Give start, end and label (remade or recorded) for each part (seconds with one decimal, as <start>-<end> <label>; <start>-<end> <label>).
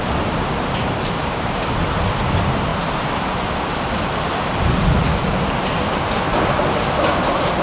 0.0-7.6 recorded